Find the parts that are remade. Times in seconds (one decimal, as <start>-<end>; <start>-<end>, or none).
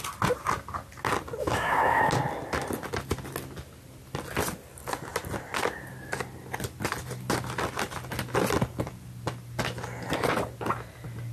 1.4-2.1